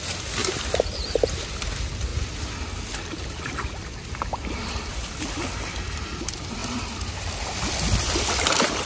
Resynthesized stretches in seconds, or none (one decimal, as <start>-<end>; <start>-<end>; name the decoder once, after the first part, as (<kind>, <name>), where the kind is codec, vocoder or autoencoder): 0.0-2.1 (vocoder, BigVGAN v2); 3.4-8.9

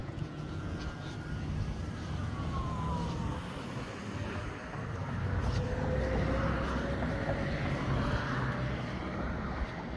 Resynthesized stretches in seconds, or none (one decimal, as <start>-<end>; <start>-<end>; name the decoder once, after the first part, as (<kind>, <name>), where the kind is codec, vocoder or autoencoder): 0.0-1.1 (vocoder, Vocos); 2.2-2.9

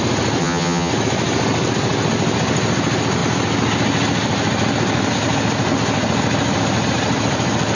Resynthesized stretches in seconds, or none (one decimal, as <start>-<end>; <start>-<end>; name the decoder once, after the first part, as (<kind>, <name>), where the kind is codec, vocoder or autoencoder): 0.4-0.9 (vocoder, HiFi-GAN)

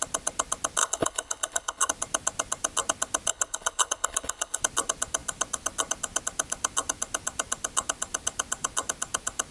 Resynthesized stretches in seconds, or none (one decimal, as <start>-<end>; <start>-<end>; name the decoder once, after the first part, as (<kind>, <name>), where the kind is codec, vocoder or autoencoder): 0.8-1.9 (codec, HILCodec); 3.3-4.6

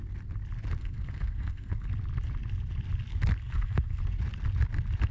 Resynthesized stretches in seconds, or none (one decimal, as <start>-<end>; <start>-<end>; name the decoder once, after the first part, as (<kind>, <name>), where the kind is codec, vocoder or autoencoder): 0.8-1.9 (codec, SNAC); 3.4-4.0

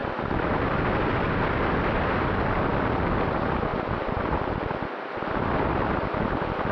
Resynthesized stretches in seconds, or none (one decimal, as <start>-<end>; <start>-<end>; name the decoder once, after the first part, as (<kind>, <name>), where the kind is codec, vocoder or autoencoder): 0.0-0.5 (vocoder, BigVGAN v2); 3.7-5.4

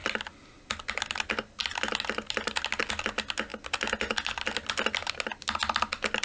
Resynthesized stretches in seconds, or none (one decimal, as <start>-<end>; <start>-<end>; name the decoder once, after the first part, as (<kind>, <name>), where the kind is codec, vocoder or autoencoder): none

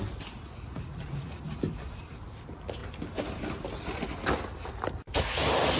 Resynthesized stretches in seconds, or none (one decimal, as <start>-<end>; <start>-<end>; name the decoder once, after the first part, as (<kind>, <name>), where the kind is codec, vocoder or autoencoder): 0.4-1.4 (vocoder, Vocos)